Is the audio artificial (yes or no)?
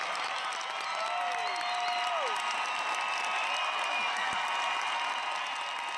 no